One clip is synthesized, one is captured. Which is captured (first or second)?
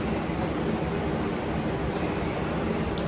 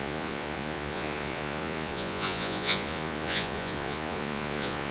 first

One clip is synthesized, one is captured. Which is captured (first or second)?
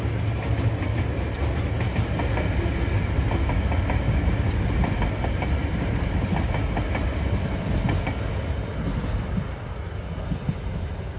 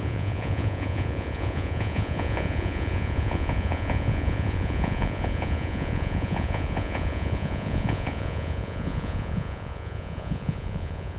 first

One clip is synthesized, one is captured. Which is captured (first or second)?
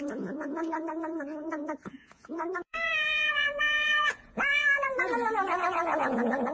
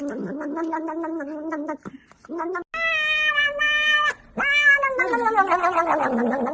second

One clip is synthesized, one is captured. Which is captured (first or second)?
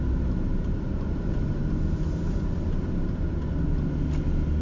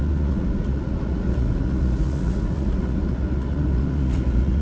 first